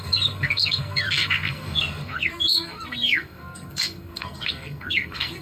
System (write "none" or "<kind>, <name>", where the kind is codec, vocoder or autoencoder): codec, SNAC